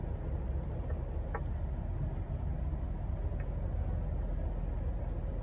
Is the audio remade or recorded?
recorded